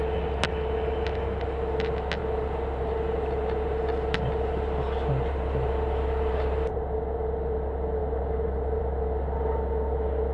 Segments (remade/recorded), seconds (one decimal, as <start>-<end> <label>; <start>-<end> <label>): 0.0-2.2 recorded; 2.2-6.8 remade; 6.8-8.0 recorded; 8.0-8.8 remade; 8.8-10.3 recorded